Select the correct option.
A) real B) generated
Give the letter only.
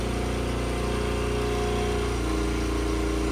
A